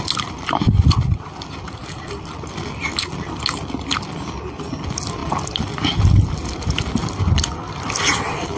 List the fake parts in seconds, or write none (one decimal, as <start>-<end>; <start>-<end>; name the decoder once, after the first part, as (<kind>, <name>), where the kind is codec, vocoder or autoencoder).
none